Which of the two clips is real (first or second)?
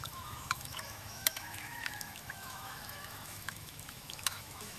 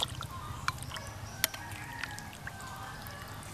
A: second